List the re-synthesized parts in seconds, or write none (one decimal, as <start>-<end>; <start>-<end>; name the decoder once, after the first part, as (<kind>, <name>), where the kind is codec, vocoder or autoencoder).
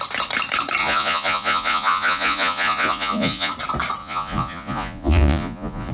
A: 0.8-3.5 (vocoder, Vocos); 4.0-5.9